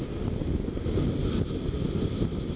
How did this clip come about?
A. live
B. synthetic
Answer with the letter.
A